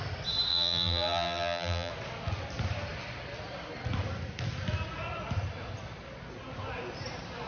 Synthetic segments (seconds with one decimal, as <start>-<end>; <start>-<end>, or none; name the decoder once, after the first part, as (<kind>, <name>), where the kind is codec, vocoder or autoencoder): 0.5-1.9 (vocoder, BigVGAN v2)